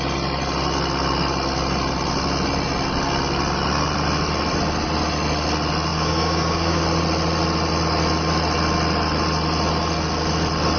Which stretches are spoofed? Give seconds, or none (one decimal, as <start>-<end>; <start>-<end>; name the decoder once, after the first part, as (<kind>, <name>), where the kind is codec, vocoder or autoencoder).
5.9-6.8 (codec, DAC)